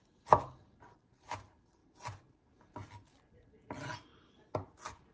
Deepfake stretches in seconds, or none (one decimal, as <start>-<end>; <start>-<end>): none